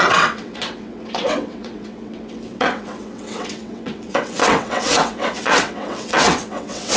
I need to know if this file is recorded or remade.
remade